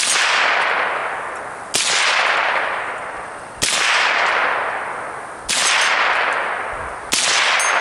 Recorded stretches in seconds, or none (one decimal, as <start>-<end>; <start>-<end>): 0.0-7.8